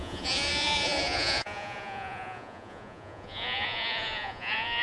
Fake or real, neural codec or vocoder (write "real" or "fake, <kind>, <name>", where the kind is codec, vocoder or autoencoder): fake, vocoder, Vocos